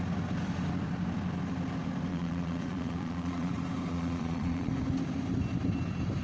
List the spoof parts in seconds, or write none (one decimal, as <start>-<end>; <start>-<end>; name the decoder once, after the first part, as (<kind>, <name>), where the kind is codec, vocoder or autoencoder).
2.1-3.5 (vocoder, Vocos); 3.9-4.7